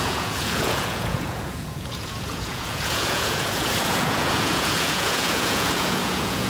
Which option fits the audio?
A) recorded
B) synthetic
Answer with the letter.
B